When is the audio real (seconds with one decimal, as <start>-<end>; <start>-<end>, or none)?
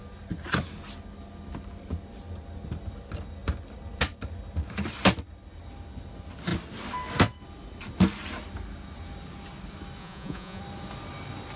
0.0-10.0; 10.6-11.6